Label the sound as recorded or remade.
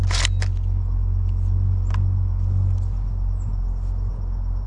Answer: recorded